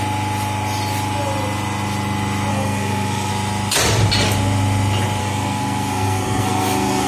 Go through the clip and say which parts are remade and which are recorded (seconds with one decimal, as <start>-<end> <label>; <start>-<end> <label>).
0.0-2.5 recorded; 2.5-3.3 remade; 3.3-5.2 recorded; 5.2-7.1 remade

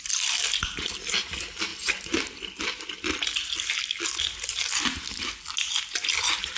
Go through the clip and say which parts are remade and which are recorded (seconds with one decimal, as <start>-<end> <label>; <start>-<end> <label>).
0.0-6.6 recorded

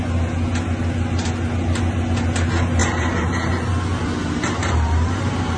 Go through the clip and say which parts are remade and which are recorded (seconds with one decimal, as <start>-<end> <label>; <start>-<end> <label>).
0.0-2.8 recorded; 2.8-3.7 remade; 3.7-4.2 recorded; 4.2-5.6 remade